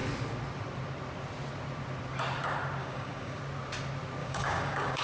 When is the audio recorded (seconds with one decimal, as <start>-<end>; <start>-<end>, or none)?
0.0-2.8; 3.4-4.2